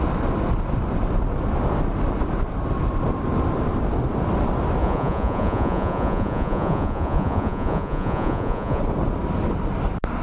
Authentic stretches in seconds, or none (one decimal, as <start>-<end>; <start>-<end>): 0.0-4.8; 8.8-10.2

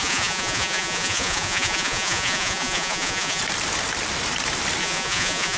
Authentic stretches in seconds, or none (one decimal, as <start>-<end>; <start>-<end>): 3.4-4.8